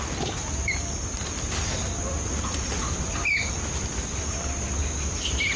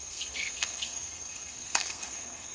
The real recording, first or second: first